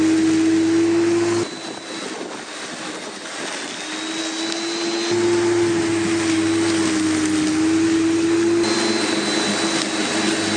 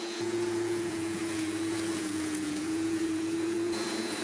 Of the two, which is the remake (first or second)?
second